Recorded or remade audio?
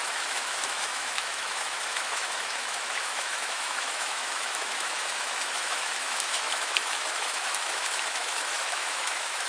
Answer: remade